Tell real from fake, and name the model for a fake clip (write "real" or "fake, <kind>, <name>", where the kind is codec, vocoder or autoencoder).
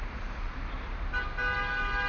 real